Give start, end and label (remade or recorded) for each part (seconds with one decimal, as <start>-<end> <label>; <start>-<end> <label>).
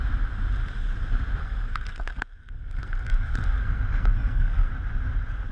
0.0-1.4 recorded; 1.4-4.7 remade; 4.7-5.5 recorded